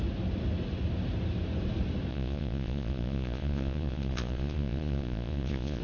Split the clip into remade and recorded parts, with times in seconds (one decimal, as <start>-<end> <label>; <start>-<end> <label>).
0.0-2.1 recorded; 2.1-5.8 remade